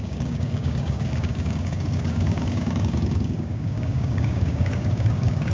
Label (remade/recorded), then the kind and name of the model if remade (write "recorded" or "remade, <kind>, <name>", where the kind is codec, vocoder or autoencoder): remade, codec, DAC